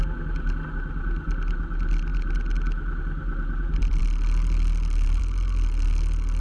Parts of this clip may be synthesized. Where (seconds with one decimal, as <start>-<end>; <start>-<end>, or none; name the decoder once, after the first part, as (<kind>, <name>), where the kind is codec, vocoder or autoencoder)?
none